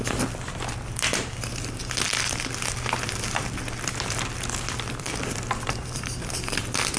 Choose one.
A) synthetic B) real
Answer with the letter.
A